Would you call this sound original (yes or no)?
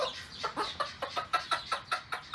yes